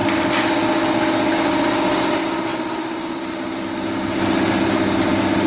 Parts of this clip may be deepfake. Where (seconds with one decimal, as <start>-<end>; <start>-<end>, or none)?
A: none